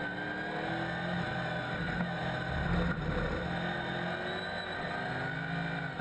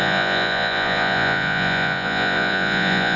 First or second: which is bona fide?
first